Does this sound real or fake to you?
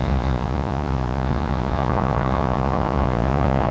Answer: fake